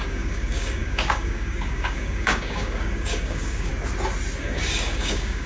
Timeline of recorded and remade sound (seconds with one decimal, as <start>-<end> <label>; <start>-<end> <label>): 0.0-3.7 remade; 3.7-4.4 recorded; 4.4-5.5 remade

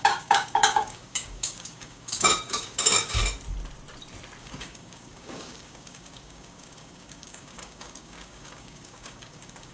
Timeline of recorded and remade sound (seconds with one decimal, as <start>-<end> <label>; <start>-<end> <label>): 0.0-3.2 remade; 3.2-4.4 recorded; 4.4-9.7 remade

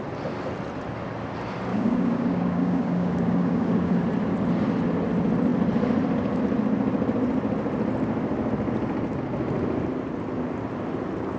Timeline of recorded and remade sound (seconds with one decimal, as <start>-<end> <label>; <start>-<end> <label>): 0.0-1.7 recorded; 1.7-4.0 remade; 4.0-11.4 recorded

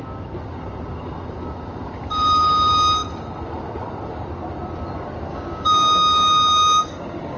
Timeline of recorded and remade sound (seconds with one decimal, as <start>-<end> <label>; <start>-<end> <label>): 0.0-5.3 recorded; 5.3-7.4 remade

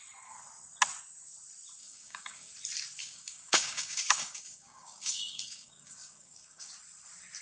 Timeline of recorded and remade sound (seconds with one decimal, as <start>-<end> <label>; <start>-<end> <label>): 0.0-1.8 recorded; 1.8-2.5 remade; 2.5-3.0 recorded; 3.0-6.7 remade; 6.7-7.4 recorded

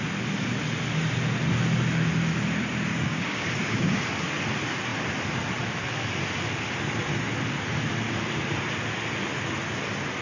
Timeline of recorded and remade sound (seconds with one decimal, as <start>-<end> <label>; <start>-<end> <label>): 0.0-2.9 recorded; 2.9-4.0 remade; 4.0-10.2 recorded

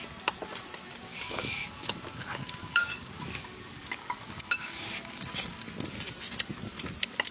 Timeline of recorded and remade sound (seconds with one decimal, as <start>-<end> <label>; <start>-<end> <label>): 0.0-1.1 recorded; 1.1-5.2 remade; 5.2-7.3 recorded

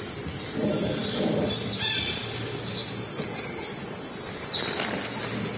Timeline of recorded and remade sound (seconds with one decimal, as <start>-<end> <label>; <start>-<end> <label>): 0.0-5.6 recorded